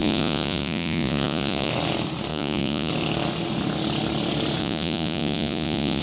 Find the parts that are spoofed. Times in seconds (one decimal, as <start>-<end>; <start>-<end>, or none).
0.0-1.7; 2.3-2.9; 4.6-6.0